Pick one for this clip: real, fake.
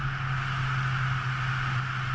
real